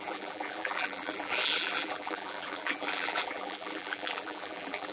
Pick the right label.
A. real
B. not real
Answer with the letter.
B